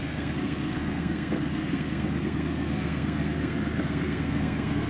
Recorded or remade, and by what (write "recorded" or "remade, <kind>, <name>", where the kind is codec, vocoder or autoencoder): remade, codec, SNAC